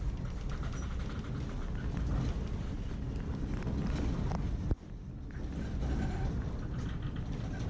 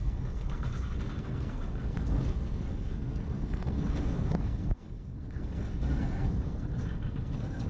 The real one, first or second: first